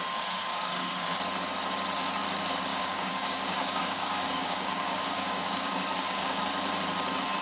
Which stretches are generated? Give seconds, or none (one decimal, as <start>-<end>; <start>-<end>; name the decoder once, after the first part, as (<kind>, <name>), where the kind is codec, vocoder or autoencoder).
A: 0.5-1.2 (codec, DAC); 2.7-6.4